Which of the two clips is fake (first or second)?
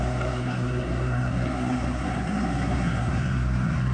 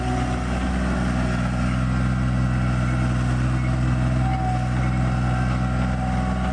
first